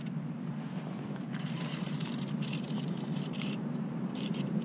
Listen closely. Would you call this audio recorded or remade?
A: remade